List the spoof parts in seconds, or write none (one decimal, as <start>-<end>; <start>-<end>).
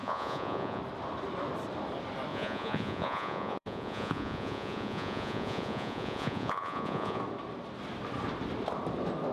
0.0-0.8; 2.3-7.2